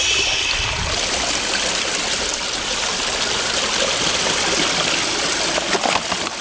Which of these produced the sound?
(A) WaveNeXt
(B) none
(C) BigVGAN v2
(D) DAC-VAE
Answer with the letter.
B